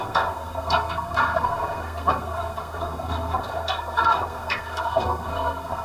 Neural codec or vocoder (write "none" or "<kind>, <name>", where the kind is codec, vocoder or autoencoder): codec, SNAC